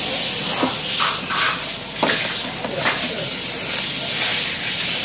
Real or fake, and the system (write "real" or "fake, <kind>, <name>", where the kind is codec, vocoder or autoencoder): real